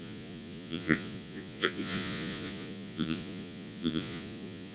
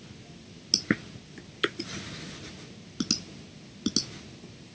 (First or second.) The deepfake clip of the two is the first